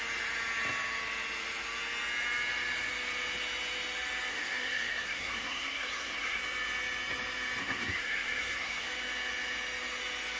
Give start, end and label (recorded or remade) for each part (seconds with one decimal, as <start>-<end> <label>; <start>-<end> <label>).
0.0-4.3 recorded; 4.3-6.4 remade; 6.4-7.6 recorded; 7.6-8.9 remade; 8.9-10.4 recorded